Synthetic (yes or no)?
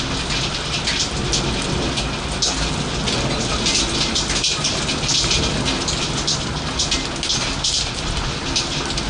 no